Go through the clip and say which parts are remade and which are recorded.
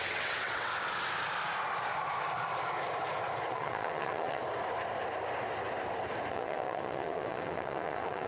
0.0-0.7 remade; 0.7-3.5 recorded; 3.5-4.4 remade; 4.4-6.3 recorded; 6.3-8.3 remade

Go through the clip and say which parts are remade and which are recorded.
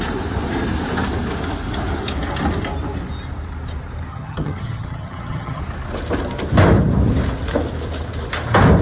0.0-4.1 recorded; 4.1-5.6 remade; 5.6-8.8 recorded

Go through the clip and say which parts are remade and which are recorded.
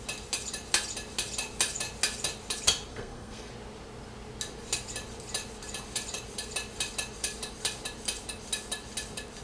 0.0-2.9 recorded; 2.9-3.5 remade; 3.5-9.4 recorded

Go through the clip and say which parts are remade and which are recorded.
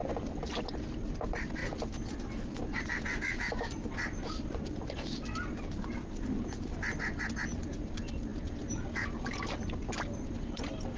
0.0-11.0 recorded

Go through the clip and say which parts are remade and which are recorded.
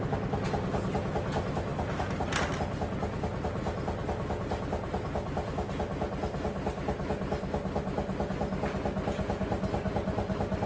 0.0-10.7 recorded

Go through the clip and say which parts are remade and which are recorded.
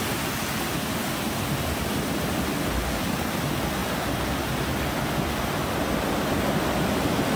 0.0-7.4 recorded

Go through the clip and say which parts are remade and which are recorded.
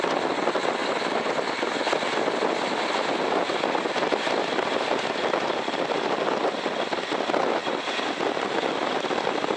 0.0-0.8 remade; 0.8-4.1 recorded; 4.1-7.6 remade; 7.6-8.3 recorded; 8.3-9.6 remade